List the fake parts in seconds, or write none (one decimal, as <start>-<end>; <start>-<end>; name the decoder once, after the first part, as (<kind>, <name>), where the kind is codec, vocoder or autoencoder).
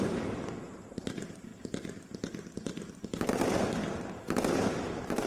0.0-1.5 (vocoder, BigVGAN v2); 4.7-5.3